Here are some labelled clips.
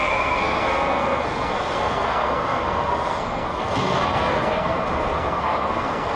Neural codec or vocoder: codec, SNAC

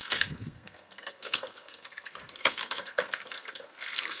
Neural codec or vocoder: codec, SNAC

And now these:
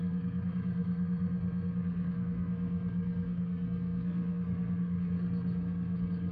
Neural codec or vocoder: codec, SNAC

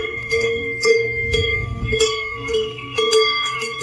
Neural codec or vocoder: codec, SNAC